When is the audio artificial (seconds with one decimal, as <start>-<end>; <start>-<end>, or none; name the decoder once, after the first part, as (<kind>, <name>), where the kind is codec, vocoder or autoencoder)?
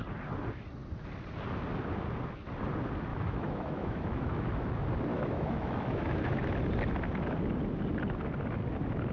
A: 3.1-4.5 (autoencoder, DAC-VAE); 5.1-6.5